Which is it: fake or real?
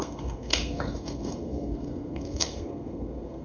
fake